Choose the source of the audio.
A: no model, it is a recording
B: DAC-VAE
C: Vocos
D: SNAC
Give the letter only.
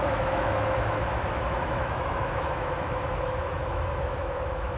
B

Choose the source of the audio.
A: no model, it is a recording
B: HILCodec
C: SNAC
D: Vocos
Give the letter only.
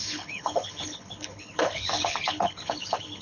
B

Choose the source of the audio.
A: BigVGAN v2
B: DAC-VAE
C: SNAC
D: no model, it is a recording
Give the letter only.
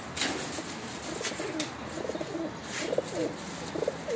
D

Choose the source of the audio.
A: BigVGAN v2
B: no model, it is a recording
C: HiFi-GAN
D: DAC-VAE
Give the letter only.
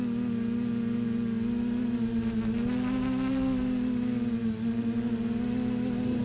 B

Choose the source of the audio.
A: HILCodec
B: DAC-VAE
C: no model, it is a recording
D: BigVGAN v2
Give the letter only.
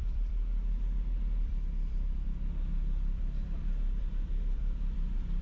D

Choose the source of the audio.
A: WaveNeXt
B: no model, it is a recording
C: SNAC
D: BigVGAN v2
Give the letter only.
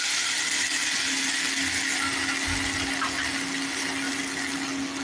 B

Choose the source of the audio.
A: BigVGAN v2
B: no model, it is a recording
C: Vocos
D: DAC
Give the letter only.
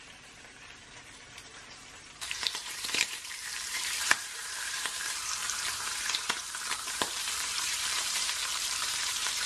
A